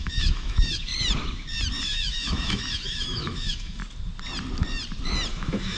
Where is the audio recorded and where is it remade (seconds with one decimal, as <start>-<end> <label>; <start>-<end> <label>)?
0.0-0.9 remade; 0.9-1.8 recorded; 1.8-3.8 remade; 3.8-5.3 recorded; 5.3-5.8 remade